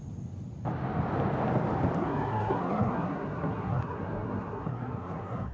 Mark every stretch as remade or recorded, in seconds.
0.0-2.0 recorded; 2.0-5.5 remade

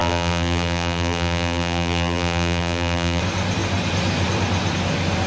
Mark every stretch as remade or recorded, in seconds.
0.0-3.2 remade; 3.2-5.3 recorded

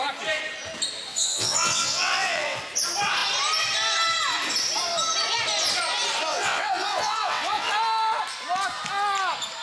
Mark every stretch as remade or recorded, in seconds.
0.0-1.1 recorded; 1.1-2.6 remade; 2.6-6.3 recorded; 6.3-7.7 remade; 7.7-9.6 recorded

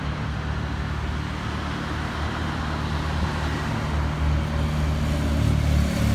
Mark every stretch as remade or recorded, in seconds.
0.0-6.1 recorded

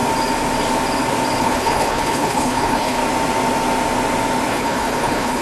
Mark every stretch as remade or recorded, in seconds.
0.0-1.4 recorded; 1.4-3.0 remade; 3.0-4.5 recorded; 4.5-5.4 remade

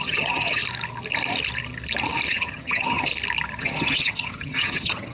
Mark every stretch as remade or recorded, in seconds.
0.0-0.6 remade; 0.6-2.3 recorded; 2.3-3.1 remade; 3.1-3.6 recorded; 3.6-5.1 remade

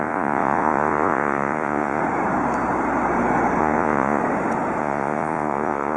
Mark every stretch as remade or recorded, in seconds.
0.0-2.0 remade; 2.0-3.6 recorded; 3.6-4.2 remade; 4.2-4.8 recorded; 4.8-6.0 remade

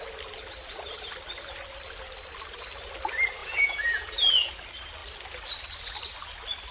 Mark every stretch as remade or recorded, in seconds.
0.0-3.4 recorded; 3.4-4.5 remade; 4.5-6.7 recorded